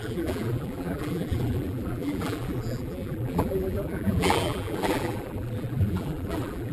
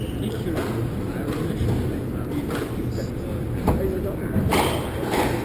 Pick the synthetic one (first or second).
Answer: first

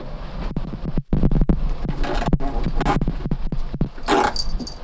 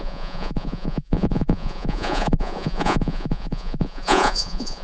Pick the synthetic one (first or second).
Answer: second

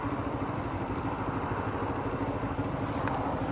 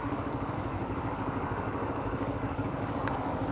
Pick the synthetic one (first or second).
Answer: second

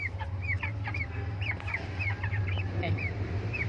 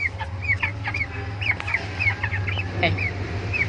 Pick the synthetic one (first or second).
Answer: first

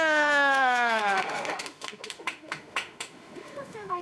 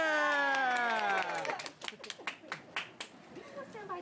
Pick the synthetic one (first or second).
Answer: first